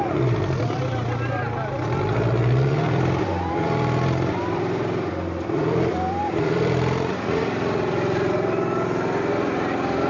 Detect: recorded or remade remade